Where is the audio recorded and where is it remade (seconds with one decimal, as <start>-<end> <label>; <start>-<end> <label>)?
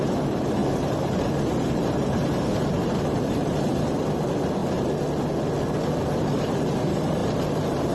0.0-4.6 remade; 4.6-6.2 recorded; 6.2-7.9 remade